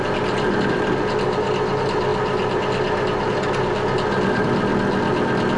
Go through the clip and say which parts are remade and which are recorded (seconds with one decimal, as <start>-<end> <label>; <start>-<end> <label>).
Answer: 0.0-5.6 recorded

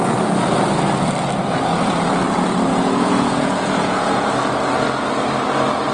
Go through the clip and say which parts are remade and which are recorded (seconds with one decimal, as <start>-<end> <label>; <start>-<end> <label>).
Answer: 0.0-2.7 recorded; 2.7-4.3 remade; 4.3-5.9 recorded

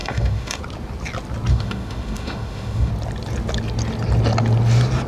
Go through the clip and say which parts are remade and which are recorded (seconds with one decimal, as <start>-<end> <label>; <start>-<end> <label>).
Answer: 0.0-0.6 remade; 0.6-1.5 recorded; 1.5-2.9 remade; 2.9-5.1 recorded

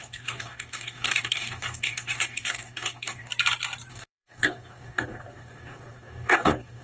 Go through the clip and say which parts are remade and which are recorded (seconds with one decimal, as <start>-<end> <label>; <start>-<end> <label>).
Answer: 0.0-3.3 remade; 3.3-3.9 recorded; 3.9-6.8 remade

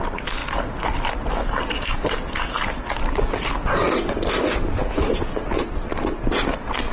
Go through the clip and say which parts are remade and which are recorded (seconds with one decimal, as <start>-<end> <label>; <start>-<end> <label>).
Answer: 0.0-6.9 recorded

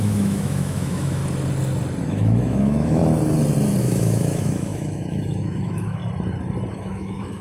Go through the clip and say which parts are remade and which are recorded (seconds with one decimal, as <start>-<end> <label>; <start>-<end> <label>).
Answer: 0.0-1.2 remade; 1.2-2.0 recorded; 2.0-3.0 remade; 3.0-3.8 recorded; 3.8-6.0 remade; 6.0-6.7 recorded; 6.7-7.4 remade